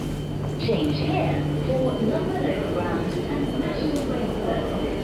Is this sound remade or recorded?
recorded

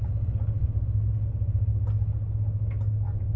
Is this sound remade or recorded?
recorded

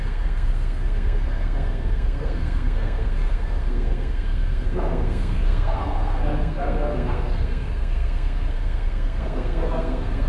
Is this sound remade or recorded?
remade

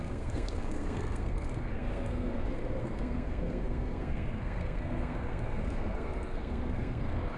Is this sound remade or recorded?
remade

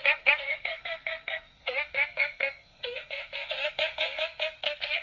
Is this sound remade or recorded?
remade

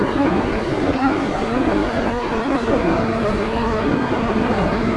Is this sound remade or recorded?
remade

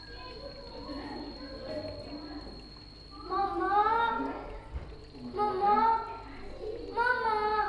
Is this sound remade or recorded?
recorded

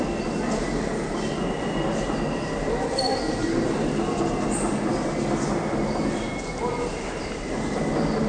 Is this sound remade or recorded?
recorded